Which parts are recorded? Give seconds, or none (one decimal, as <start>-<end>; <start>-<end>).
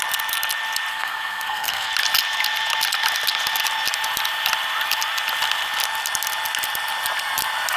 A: 0.0-0.9; 1.9-7.8